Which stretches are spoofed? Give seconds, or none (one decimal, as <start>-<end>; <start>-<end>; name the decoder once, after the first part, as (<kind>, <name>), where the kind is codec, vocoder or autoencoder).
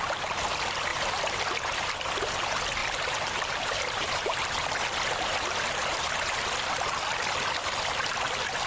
0.9-1.4 (vocoder, BigVGAN v2); 2.8-4.7